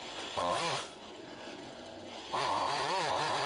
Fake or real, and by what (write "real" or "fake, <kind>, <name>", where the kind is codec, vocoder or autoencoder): fake, vocoder, Vocos